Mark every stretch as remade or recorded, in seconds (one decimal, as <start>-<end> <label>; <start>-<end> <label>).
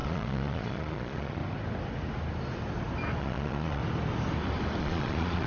0.0-1.4 remade; 1.4-3.2 recorded; 3.2-3.8 remade; 3.8-4.8 recorded; 4.8-5.5 remade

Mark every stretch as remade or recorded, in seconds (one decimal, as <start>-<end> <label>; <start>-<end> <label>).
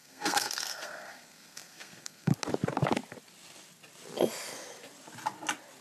0.0-2.3 remade; 2.3-5.8 recorded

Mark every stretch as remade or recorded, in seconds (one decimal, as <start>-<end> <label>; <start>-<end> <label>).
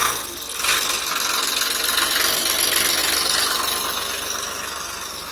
0.0-5.3 recorded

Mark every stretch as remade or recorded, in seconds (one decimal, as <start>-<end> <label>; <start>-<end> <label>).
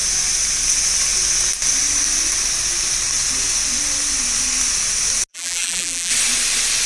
0.0-5.3 recorded; 5.3-6.1 remade; 6.1-6.9 recorded